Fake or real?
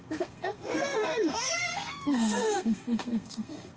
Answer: fake